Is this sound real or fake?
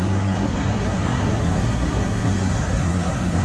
fake